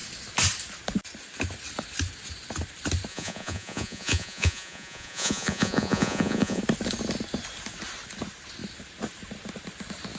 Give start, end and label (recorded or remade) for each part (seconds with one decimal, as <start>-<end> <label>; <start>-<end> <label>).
0.0-3.1 recorded; 3.1-6.6 remade; 6.6-10.2 recorded